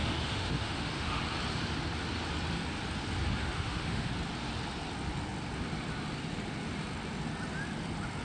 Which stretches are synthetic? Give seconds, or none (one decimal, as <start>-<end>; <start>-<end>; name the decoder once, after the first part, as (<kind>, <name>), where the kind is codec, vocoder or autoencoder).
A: 0.0-1.2 (autoencoder, DAC-VAE); 3.4-4.1